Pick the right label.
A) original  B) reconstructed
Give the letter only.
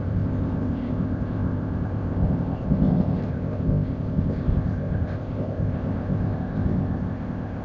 B